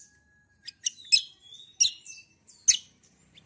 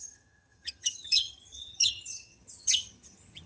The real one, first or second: first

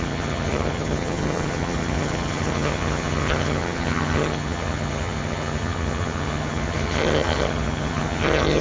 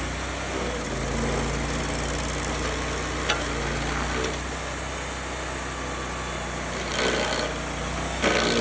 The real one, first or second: second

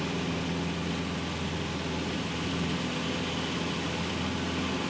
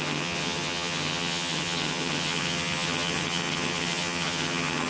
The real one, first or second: first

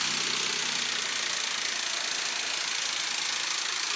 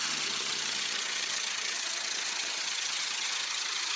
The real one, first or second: first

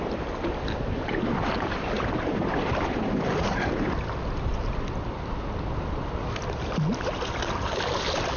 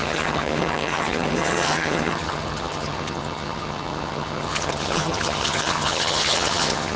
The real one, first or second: first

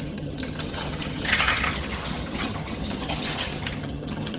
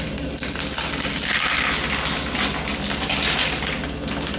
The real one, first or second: second